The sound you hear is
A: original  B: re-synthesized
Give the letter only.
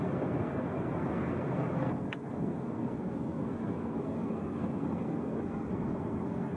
B